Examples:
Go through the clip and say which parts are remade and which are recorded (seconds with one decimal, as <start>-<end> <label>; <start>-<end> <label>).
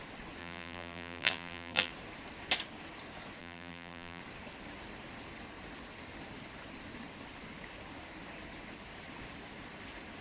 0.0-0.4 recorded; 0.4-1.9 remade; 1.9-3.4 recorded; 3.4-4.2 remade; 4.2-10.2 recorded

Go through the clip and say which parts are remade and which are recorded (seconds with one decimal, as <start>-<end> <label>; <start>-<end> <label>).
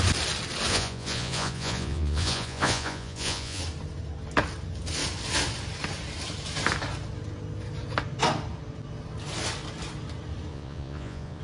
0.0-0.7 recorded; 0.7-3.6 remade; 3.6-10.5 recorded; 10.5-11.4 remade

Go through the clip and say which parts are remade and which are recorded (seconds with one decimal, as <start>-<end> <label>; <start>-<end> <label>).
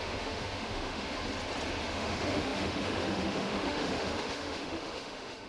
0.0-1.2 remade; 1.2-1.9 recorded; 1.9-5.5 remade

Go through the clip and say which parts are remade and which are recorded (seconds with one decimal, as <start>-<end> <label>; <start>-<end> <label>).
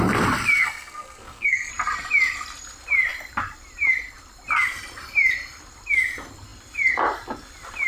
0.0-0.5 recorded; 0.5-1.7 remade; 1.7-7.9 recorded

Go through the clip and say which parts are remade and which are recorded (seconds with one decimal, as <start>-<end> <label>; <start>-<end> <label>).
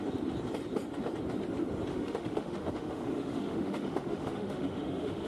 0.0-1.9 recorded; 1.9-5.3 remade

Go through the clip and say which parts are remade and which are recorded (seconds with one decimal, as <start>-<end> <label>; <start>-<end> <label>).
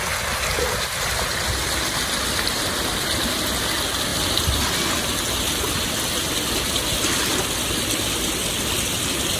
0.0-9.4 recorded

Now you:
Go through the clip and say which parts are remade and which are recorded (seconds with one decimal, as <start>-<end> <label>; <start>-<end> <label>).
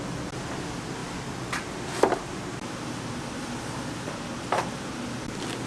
0.0-5.7 recorded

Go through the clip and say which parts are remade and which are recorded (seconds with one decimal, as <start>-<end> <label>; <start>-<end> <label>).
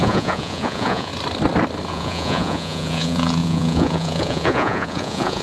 0.0-1.1 remade; 1.1-1.9 recorded; 1.9-5.4 remade